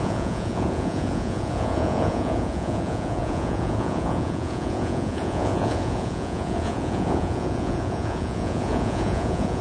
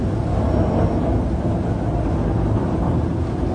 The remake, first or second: first